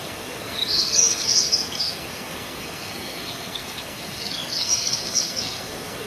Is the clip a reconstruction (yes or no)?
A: yes